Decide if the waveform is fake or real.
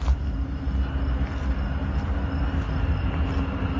real